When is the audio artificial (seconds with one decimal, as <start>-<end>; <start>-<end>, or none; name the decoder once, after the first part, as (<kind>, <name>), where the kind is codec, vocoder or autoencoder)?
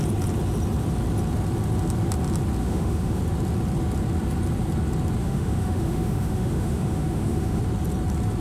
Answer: 2.6-3.2 (autoencoder, DAC-VAE); 5.2-7.6